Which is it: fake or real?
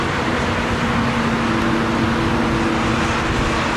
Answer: real